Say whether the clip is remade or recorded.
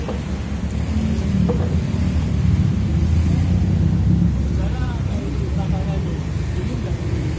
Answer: recorded